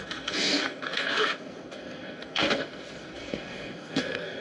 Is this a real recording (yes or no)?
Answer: no